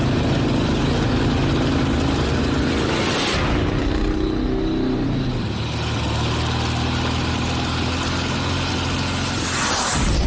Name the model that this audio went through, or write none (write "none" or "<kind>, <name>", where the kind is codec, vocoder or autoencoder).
none